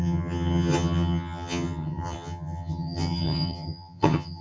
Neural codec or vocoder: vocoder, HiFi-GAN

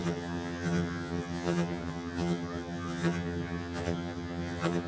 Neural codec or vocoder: vocoder, HiFi-GAN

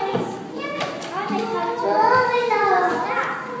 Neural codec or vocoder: none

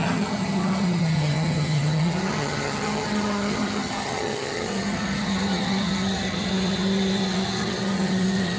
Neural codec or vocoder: vocoder, HiFi-GAN